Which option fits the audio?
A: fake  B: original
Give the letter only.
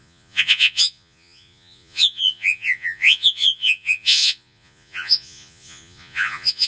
A